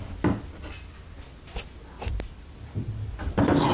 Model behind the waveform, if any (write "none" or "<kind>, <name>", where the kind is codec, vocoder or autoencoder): none